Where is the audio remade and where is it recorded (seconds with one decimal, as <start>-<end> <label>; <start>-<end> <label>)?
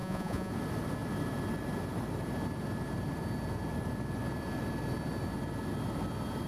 0.0-0.5 remade; 0.5-6.5 recorded